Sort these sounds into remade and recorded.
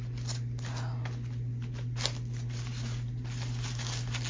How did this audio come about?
recorded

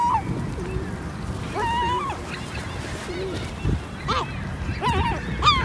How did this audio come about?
recorded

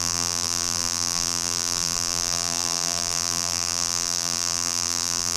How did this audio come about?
remade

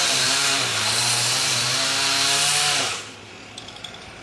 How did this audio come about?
remade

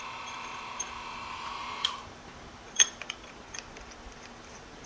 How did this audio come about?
remade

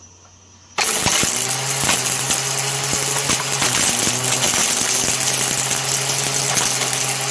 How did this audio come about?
recorded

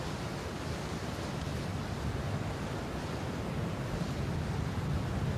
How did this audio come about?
recorded